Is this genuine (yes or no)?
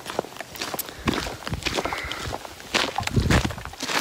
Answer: yes